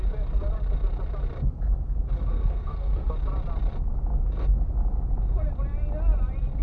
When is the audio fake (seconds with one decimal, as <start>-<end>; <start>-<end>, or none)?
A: 2.3-3.1